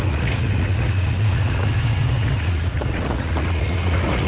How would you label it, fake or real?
fake